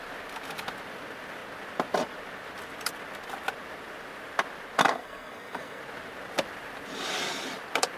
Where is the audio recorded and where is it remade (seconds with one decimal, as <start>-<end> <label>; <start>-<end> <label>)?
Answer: 0.0-4.8 recorded; 4.8-5.8 remade; 5.8-8.0 recorded